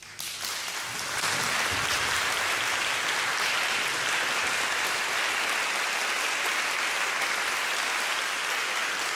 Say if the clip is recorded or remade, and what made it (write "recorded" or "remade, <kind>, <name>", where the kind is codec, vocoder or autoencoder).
recorded